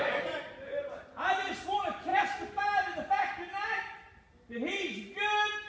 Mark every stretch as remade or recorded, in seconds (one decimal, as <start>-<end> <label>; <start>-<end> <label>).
0.0-5.7 recorded